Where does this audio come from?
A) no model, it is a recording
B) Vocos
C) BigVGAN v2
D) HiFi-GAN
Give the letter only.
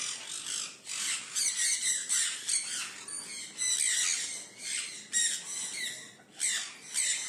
A